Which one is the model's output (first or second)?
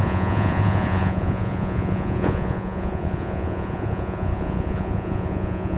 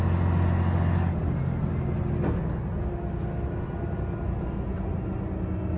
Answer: first